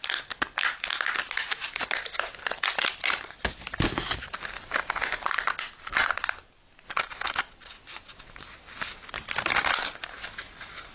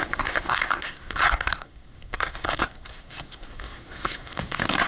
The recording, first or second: first